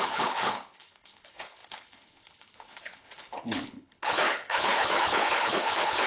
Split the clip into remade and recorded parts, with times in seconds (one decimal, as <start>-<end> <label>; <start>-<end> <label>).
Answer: 0.0-6.1 remade